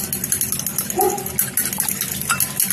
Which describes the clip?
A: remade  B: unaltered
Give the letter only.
B